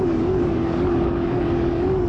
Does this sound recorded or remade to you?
remade